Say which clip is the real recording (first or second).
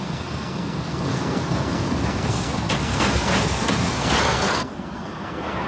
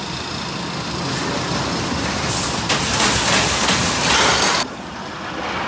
second